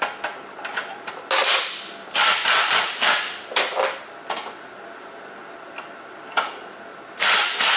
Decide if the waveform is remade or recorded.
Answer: recorded